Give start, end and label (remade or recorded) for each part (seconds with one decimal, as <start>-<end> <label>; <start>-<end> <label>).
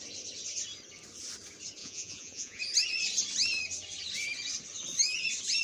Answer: 0.0-1.8 recorded; 1.8-2.6 remade; 2.6-5.6 recorded